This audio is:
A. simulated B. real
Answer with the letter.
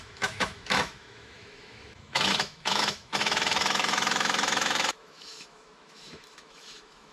A